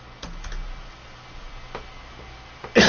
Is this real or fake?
real